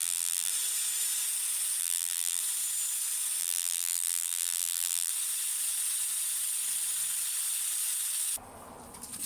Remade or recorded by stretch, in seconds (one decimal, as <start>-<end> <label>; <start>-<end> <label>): 0.0-0.5 remade; 0.5-1.8 recorded; 1.8-2.4 remade; 2.4-3.4 recorded; 3.4-5.1 remade; 5.1-9.3 recorded